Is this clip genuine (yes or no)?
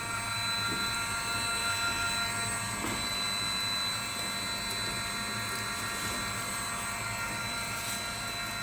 yes